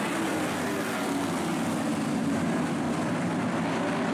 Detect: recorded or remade recorded